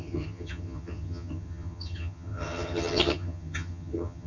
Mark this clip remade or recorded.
remade